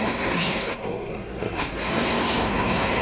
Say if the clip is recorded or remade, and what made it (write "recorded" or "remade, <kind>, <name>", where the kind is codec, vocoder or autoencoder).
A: remade, codec, SNAC